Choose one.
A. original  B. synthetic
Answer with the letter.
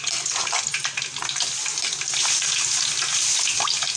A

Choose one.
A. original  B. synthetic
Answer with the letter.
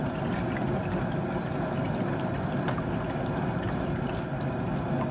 A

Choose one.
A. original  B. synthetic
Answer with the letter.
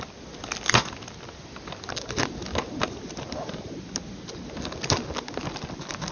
A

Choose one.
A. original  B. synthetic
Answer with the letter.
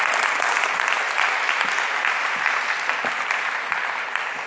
A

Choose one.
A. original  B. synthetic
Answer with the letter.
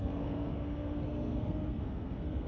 B